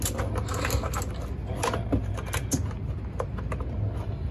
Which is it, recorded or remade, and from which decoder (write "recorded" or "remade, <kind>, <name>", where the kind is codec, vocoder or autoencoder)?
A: recorded